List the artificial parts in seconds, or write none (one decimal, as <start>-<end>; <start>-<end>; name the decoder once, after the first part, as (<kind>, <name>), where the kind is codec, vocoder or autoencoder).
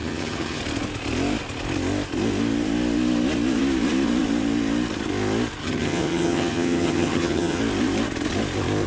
0.0-0.6 (vocoder, HiFi-GAN); 5.6-7.6